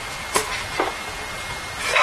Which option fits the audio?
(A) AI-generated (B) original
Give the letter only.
B